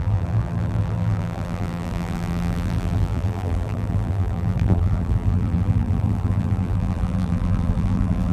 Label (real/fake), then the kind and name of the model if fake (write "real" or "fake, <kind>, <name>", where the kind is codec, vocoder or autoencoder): fake, vocoder, BigVGAN v2